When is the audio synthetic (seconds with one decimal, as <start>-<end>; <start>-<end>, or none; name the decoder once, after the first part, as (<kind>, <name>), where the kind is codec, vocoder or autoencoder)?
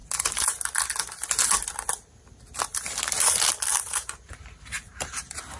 3.7-5.6 (vocoder, BigVGAN v2)